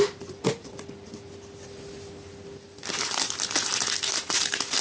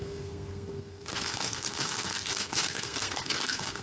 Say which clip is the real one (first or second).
first